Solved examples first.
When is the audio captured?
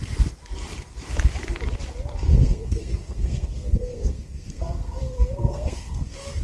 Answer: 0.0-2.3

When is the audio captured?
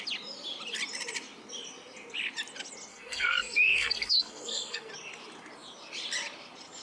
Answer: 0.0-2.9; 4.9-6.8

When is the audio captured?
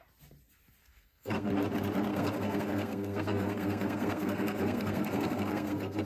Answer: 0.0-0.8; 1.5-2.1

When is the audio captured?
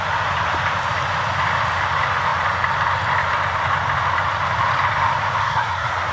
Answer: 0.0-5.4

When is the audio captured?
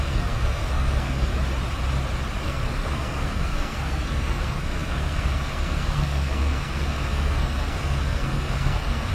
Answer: 1.3-2.4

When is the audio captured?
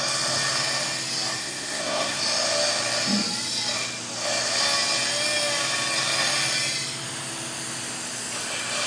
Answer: 0.0-1.4; 2.2-8.9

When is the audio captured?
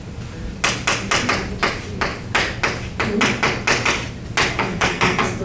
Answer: 0.0-4.5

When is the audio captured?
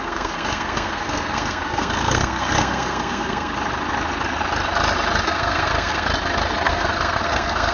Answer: 3.5-5.2; 6.1-6.7